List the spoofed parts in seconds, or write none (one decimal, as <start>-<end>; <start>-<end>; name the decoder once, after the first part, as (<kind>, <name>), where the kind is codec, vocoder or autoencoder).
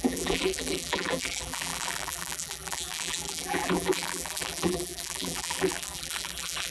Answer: 0.0-6.7 (vocoder, BigVGAN v2)